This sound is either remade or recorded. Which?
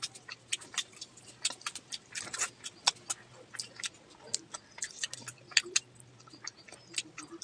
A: recorded